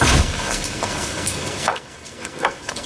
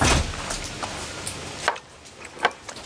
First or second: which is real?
second